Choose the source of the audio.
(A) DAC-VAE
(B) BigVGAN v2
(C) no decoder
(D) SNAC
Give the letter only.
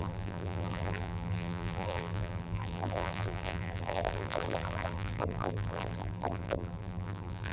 B